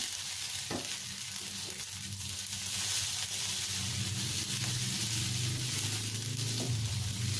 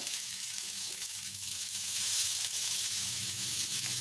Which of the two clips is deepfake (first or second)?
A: second